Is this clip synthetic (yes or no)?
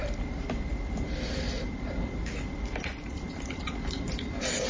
yes